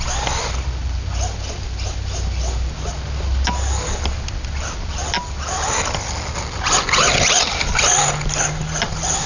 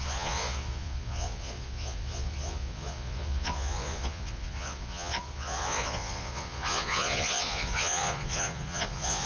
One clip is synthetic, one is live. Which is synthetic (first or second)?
second